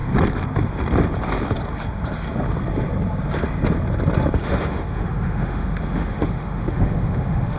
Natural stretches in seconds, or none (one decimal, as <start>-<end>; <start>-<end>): 0.0-4.4